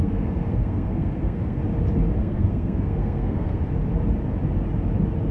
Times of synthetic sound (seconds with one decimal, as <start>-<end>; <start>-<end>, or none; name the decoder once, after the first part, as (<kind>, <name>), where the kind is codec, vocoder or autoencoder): 0.0-1.6 (codec, SNAC); 2.2-3.6